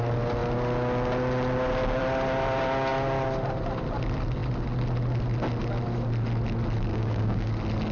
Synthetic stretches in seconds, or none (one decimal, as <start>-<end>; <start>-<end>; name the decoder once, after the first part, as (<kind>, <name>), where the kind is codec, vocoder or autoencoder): 6.9-7.5 (codec, DAC)